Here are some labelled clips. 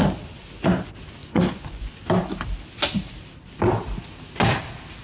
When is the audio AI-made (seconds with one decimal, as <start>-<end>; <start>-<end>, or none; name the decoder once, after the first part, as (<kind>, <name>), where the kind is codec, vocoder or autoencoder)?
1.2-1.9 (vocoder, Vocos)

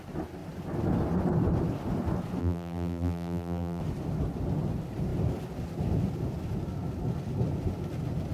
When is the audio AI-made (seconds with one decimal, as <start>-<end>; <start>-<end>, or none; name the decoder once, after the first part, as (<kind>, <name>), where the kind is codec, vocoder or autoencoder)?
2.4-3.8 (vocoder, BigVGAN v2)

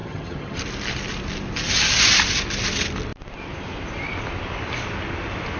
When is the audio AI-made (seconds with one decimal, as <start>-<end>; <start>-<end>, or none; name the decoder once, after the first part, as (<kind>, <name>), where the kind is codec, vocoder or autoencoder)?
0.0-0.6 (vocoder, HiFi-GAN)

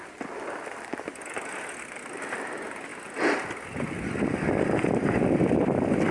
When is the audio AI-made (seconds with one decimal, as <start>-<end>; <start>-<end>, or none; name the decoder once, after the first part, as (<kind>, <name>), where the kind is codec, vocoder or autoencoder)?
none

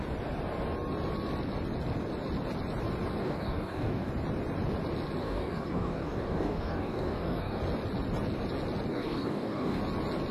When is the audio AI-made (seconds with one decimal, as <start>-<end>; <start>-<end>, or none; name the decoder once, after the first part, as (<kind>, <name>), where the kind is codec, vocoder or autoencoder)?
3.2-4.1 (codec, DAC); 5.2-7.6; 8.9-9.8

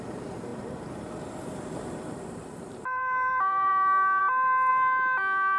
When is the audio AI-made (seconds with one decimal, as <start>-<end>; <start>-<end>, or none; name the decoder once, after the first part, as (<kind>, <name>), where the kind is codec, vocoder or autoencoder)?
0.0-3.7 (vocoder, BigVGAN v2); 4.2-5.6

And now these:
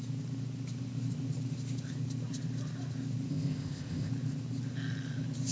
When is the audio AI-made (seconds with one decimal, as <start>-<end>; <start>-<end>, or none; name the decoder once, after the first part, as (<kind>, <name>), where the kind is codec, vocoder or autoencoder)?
3.3-4.1 (codec, ZipCodec)

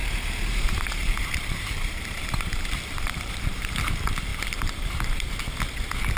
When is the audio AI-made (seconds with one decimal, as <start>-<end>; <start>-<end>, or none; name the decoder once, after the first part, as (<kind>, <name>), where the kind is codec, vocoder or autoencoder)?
0.0-3.7 (vocoder, BigVGAN v2); 4.3-5.4